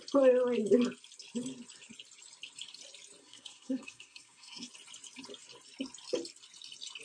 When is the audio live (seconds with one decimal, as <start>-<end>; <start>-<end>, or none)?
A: 0.0-3.2; 4.7-7.0